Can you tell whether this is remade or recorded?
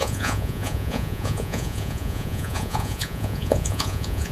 remade